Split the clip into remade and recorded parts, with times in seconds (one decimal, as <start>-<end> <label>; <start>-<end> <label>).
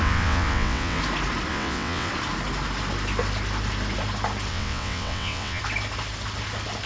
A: 0.0-1.0 remade; 1.0-1.5 recorded; 1.5-2.1 remade; 2.1-4.5 recorded; 4.5-5.6 remade; 5.6-6.9 recorded